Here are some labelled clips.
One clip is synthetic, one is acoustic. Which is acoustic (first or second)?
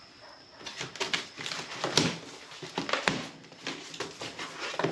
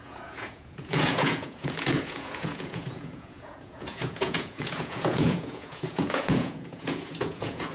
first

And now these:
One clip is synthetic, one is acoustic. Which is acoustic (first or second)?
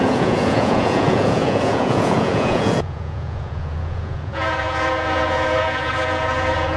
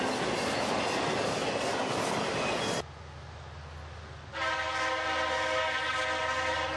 second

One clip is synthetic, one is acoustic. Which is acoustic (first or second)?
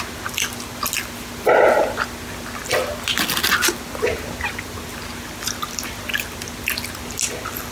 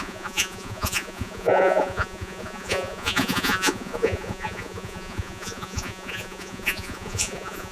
first